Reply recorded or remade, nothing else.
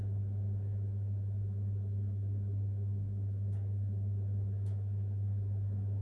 remade